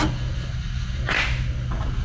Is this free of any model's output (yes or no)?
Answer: yes